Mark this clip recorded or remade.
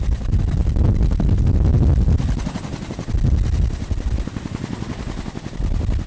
recorded